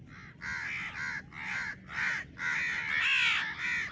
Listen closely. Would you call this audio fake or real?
real